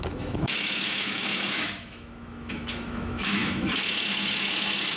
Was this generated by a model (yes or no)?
yes